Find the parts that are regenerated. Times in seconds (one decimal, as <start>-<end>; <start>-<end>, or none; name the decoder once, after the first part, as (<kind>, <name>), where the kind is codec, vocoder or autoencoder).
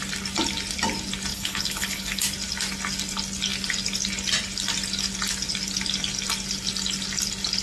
1.3-2.2 (codec, HILCodec)